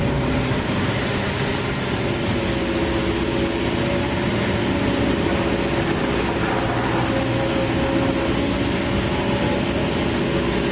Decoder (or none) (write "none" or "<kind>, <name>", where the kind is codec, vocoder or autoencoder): none